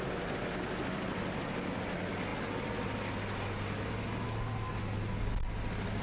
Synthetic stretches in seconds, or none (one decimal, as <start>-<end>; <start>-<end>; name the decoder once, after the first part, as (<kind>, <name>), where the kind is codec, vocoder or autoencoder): none